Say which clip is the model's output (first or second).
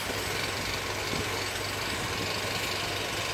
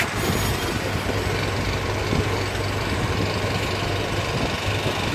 second